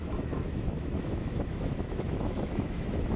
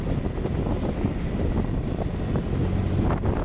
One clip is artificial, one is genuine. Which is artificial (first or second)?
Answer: first